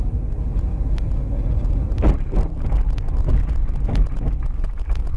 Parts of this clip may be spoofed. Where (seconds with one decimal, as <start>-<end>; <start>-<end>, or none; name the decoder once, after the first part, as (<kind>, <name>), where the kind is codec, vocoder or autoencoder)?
none